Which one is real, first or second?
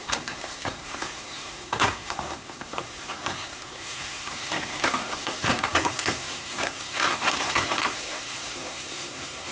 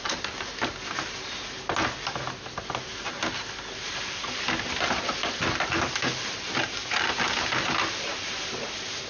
second